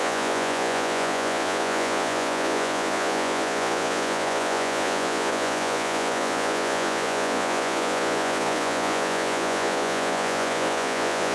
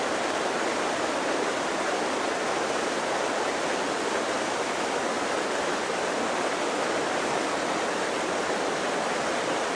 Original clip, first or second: second